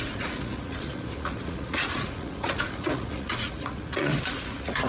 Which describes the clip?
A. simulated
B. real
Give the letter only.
A